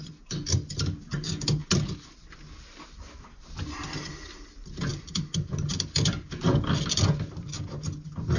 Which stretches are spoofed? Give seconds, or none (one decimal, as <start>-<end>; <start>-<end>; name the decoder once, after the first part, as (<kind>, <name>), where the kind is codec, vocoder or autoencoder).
none